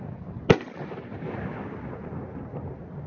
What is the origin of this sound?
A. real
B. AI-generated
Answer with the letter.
A